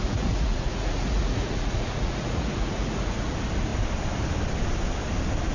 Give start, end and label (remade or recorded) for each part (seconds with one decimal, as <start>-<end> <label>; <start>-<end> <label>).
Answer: 0.0-3.3 remade; 3.3-5.5 recorded